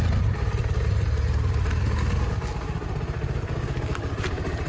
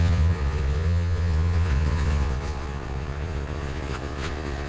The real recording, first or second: first